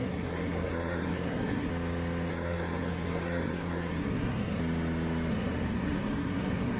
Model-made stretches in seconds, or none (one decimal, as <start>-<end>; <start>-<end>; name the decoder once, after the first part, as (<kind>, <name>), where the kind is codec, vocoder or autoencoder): 0.0-1.7 (codec, SNAC); 2.3-4.6; 5.3-6.8